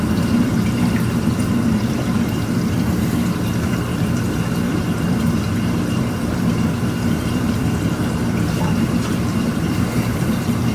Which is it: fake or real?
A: fake